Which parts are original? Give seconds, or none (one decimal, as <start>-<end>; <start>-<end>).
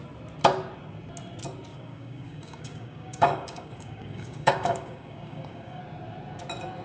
0.0-1.7; 5.8-6.8